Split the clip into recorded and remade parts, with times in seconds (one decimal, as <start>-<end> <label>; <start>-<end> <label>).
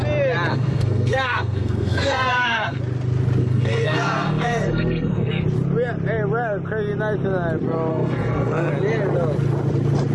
0.0-0.5 recorded; 0.5-2.8 remade; 2.8-3.4 recorded; 3.4-5.4 remade; 5.4-7.9 recorded; 7.9-8.7 remade; 8.7-10.1 recorded